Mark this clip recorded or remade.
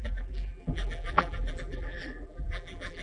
remade